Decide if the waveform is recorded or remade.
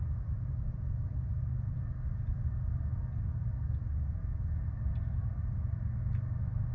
recorded